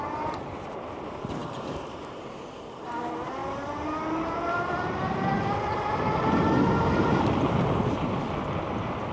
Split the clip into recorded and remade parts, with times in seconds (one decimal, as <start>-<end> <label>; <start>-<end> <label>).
0.0-3.4 remade; 3.4-7.5 recorded; 7.5-8.2 remade; 8.2-9.1 recorded

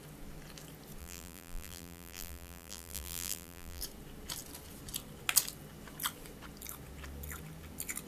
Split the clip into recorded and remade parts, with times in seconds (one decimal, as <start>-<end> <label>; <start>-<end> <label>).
0.0-1.0 recorded; 1.0-3.8 remade; 3.8-8.1 recorded

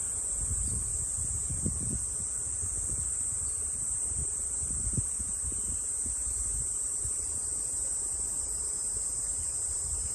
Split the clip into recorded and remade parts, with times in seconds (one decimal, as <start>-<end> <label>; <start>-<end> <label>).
0.0-0.9 remade; 0.9-3.5 recorded; 3.5-10.1 remade